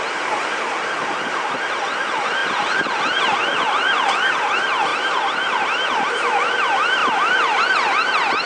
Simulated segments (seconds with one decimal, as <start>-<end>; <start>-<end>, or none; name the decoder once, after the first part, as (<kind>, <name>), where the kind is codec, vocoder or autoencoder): 0.0-1.0 (vocoder, BigVGAN v2); 1.8-4.9; 6.1-8.5